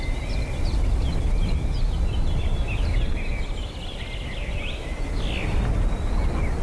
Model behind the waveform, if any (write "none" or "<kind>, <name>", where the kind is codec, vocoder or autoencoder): none